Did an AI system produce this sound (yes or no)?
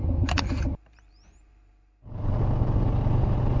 yes